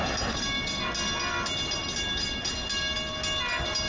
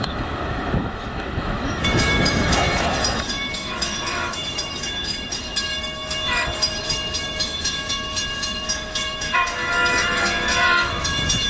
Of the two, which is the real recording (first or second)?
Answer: first